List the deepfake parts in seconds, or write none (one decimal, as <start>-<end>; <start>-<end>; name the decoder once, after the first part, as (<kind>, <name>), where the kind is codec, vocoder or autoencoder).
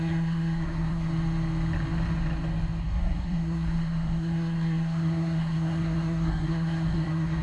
0.0-1.1 (codec, SNAC); 2.8-7.4